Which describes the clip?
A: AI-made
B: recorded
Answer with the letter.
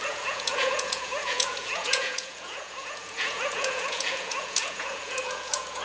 A